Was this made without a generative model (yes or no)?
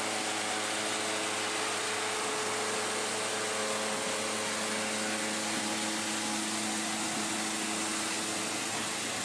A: yes